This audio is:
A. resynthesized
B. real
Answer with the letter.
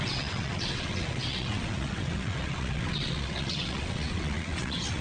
A